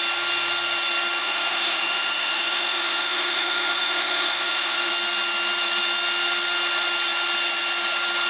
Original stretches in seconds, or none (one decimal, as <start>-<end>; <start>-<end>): 0.0-1.2; 4.9-8.3